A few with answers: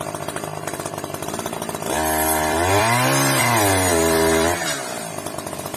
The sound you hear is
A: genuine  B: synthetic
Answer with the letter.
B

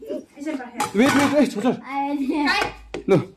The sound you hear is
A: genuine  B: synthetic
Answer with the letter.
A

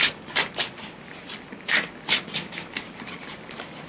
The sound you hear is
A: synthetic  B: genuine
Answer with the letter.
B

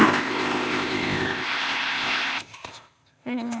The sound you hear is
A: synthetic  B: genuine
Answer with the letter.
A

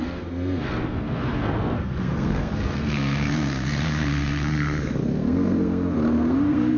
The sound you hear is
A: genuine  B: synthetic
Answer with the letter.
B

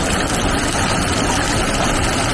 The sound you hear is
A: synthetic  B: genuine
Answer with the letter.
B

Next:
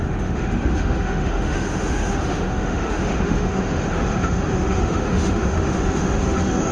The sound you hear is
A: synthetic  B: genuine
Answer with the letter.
A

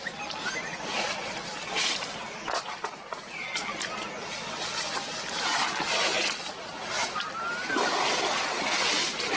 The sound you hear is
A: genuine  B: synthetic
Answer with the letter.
A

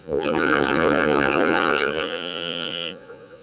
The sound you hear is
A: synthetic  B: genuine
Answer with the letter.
A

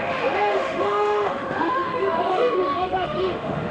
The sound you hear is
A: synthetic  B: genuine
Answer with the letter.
A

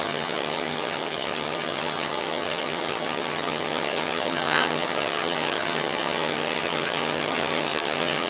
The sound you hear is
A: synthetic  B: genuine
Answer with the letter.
A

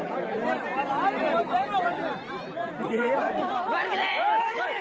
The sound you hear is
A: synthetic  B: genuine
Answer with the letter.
A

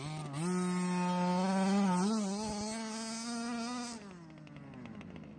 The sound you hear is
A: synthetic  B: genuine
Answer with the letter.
B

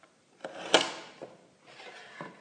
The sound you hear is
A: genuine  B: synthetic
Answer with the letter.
A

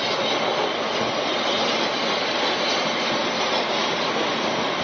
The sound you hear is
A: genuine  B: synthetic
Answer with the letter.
A